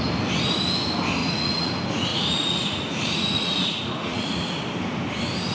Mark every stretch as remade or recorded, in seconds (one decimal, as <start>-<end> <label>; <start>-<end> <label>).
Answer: 0.0-1.2 recorded; 1.2-1.7 remade; 1.7-2.1 recorded; 2.1-4.6 remade; 4.6-5.5 recorded